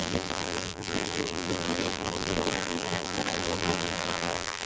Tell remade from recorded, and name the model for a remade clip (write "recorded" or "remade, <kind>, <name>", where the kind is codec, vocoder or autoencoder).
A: remade, vocoder, BigVGAN v2